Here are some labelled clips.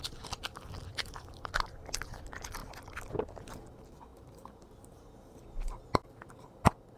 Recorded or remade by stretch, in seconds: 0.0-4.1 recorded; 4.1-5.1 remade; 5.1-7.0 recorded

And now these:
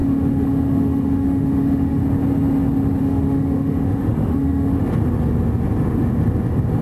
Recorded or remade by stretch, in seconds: 0.0-2.0 remade; 2.0-3.0 recorded; 3.0-4.8 remade; 4.8-6.8 recorded

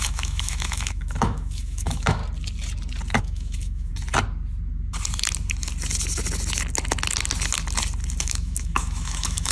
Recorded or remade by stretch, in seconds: 0.0-2.2 remade; 2.2-3.2 recorded; 3.2-3.9 remade; 3.9-8.2 recorded; 8.2-9.5 remade

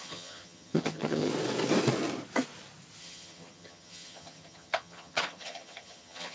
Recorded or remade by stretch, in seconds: 0.0-1.3 remade; 1.3-3.0 recorded; 3.0-6.3 remade

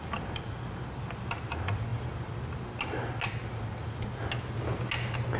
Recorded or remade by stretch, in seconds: 0.0-5.4 recorded